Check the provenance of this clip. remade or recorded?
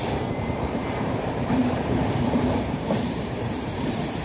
remade